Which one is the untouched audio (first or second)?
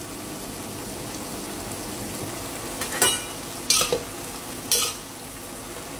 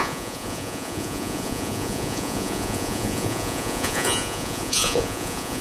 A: first